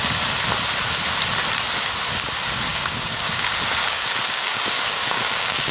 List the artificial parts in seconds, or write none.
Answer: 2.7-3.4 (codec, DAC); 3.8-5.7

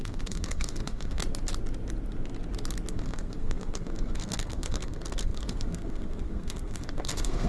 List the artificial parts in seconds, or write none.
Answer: 0.0-1.2 (codec, SNAC); 2.9-7.5

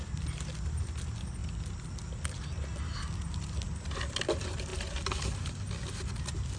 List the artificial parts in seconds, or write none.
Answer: none

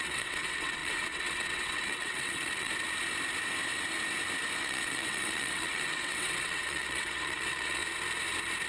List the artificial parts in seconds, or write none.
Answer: 0.0-2.7 (vocoder, WaveNeXt); 4.6-7.8

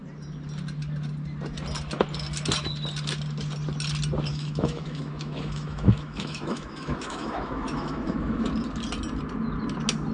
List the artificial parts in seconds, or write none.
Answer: 4.3-8.5 (autoencoder, DAC-VAE)